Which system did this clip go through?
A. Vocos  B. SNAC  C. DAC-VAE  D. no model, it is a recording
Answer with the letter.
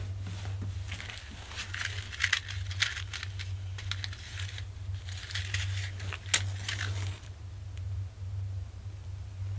D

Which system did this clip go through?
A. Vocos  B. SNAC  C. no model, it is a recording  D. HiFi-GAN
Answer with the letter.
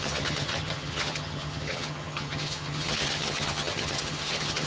D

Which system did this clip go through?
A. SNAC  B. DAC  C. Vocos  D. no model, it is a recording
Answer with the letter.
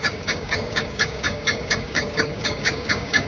B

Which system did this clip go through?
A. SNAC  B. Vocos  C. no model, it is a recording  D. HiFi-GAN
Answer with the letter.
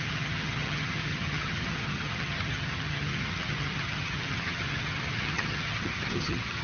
D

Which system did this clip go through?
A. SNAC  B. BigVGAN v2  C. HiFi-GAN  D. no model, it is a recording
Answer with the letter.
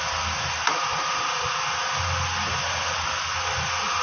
D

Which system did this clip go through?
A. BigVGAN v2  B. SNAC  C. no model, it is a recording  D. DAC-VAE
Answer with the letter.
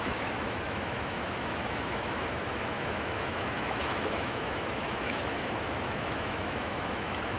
D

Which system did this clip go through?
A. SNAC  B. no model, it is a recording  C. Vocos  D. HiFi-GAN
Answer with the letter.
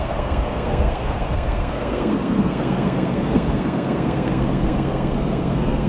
A